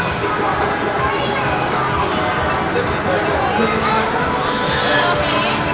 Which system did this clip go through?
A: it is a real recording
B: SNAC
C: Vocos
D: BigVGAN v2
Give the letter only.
A